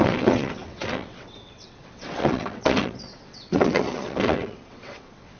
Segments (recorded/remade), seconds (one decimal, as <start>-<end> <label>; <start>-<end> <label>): 0.0-5.4 remade